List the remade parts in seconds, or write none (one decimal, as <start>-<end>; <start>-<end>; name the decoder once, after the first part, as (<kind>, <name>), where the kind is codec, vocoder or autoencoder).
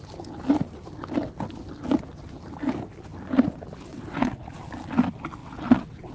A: 3.9-4.5 (vocoder, WaveNeXt); 5.4-6.1